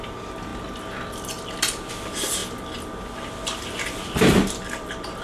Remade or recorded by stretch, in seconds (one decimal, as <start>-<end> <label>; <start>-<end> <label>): 0.0-5.2 recorded